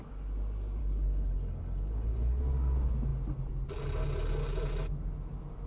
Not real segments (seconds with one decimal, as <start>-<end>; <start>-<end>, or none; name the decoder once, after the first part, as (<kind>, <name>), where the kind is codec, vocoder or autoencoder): 0.8-2.4 (codec, HILCodec)